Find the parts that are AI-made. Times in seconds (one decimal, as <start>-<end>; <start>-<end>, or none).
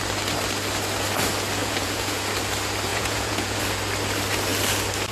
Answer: 1.6-2.2; 2.9-3.6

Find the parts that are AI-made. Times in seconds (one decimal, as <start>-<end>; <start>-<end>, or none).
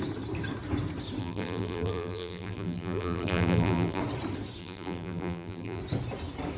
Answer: 1.2-4.0; 4.6-5.8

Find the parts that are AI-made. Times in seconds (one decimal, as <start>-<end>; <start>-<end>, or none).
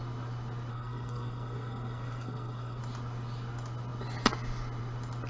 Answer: 0.7-2.8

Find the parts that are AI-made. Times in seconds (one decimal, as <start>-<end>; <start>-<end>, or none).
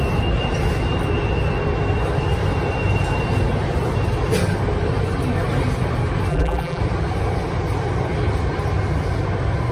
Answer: 6.3-6.8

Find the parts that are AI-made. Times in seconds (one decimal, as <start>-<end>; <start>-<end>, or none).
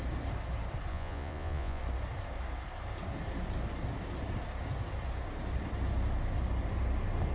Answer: 0.9-1.8